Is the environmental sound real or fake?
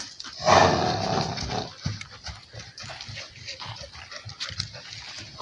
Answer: real